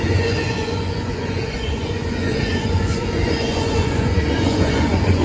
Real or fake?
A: fake